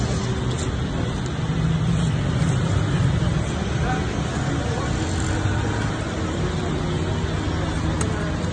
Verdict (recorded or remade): recorded